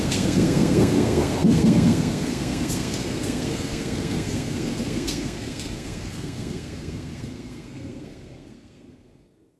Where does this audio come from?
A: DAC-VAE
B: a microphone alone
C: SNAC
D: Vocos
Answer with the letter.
C